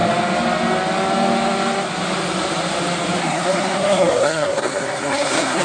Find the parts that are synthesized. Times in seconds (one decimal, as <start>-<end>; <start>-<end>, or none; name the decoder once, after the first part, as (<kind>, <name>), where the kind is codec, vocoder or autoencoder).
3.2-5.6 (codec, SNAC)